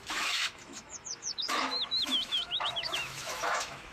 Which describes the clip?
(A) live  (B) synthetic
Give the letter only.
B